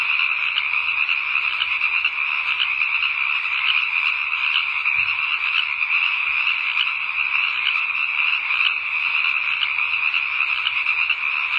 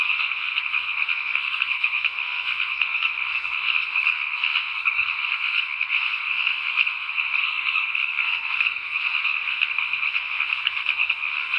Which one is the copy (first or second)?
second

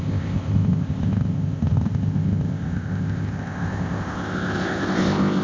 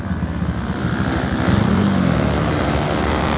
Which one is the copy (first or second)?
first